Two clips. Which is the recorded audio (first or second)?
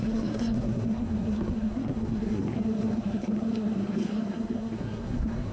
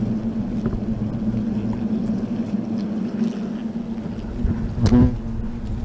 second